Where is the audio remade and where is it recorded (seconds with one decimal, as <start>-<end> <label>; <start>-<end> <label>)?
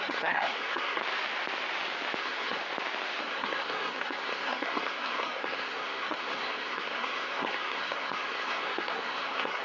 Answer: 0.0-1.0 remade; 1.0-2.2 recorded; 2.2-2.6 remade; 2.6-3.2 recorded; 3.2-9.6 remade